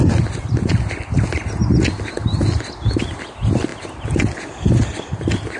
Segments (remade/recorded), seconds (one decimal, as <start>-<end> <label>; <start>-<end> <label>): 0.0-5.6 recorded